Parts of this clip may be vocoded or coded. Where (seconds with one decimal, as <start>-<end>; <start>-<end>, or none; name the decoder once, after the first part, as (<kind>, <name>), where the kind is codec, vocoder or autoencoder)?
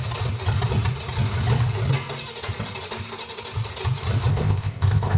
4.3-5.2 (codec, ZipCodec)